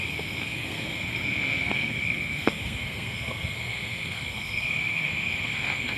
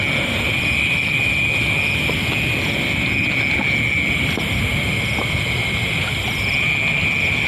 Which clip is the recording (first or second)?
second